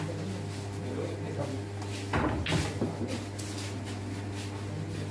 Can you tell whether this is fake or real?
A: real